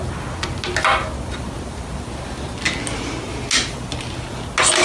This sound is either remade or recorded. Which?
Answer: recorded